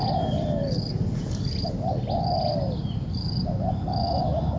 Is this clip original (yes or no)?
yes